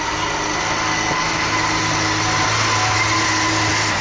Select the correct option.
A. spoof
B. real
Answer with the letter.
B